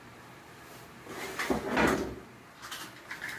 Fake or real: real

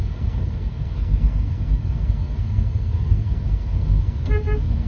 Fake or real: fake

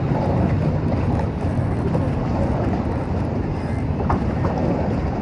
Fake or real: real